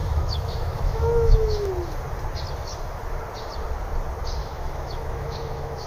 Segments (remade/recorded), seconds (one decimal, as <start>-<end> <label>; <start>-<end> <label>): 0.0-1.7 remade; 1.7-4.4 recorded; 4.4-5.9 remade